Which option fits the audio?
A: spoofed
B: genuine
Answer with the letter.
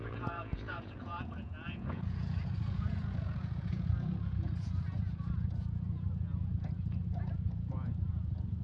A